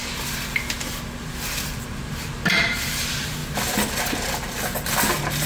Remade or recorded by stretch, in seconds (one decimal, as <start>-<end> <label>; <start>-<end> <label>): 0.0-2.7 recorded; 2.7-3.4 remade; 3.4-5.5 recorded